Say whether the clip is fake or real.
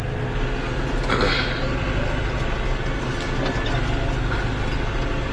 real